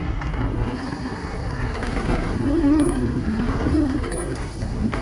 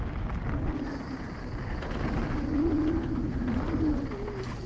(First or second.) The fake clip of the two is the first